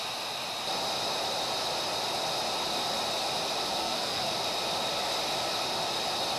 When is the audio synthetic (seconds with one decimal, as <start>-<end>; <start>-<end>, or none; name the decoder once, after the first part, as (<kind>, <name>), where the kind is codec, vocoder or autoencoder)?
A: 3.8-4.3 (codec, SNAC)